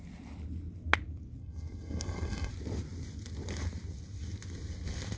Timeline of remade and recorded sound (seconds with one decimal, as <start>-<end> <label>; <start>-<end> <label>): 0.0-1.4 recorded; 1.4-2.5 remade; 2.5-5.2 recorded